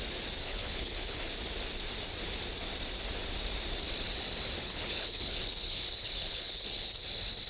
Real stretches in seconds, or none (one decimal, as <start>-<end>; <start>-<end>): 0.0-0.4; 1.3-4.6; 7.0-7.5